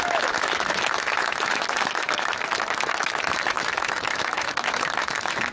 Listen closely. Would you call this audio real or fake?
fake